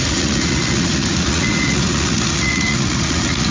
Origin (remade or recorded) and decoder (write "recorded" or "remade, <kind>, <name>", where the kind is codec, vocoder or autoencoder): remade, vocoder, Vocos